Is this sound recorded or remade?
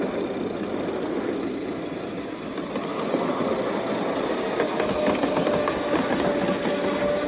recorded